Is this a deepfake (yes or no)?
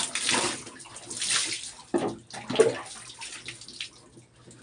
no